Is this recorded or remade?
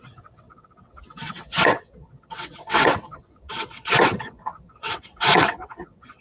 remade